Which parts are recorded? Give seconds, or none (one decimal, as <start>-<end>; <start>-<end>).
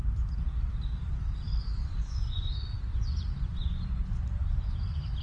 0.0-1.8; 2.5-2.9; 4.0-5.2